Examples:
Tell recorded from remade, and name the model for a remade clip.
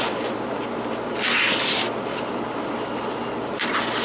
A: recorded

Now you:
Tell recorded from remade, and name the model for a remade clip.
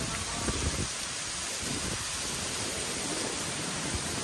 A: recorded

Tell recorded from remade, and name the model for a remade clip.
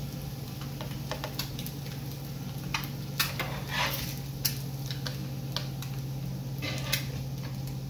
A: recorded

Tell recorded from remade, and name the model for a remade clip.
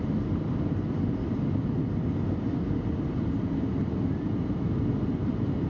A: recorded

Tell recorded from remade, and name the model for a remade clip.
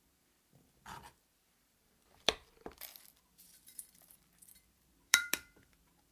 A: remade, vocoder, BigVGAN v2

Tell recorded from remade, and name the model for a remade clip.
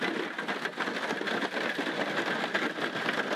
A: recorded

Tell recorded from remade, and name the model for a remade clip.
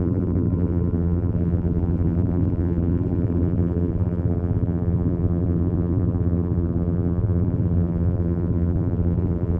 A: remade, vocoder, BigVGAN v2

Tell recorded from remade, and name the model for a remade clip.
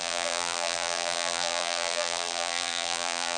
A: remade, vocoder, BigVGAN v2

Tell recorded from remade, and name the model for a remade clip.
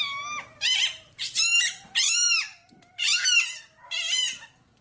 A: remade, vocoder, BigVGAN v2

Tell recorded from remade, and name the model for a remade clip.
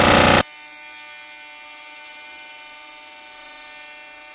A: recorded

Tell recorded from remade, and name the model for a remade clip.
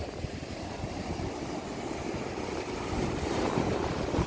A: recorded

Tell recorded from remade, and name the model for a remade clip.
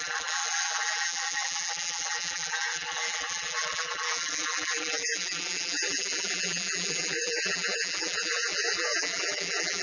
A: remade, vocoder, BigVGAN v2